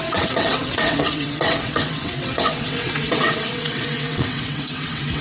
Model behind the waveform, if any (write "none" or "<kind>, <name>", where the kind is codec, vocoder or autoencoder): vocoder, WaveNeXt